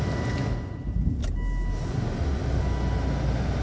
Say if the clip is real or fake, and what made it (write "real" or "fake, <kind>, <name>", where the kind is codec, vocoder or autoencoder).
real